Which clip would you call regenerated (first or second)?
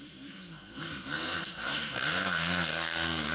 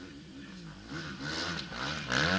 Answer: first